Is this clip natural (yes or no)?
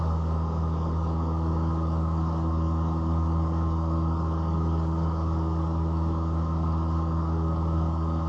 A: no